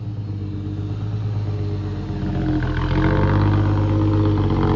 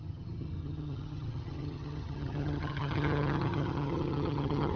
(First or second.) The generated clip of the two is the second